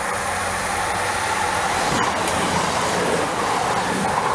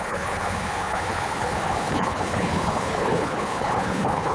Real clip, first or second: first